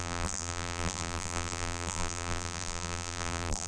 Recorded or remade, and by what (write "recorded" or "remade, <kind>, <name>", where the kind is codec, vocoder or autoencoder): remade, vocoder, BigVGAN v2